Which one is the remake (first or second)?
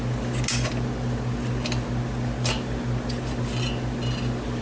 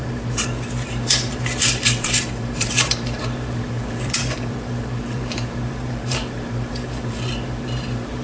second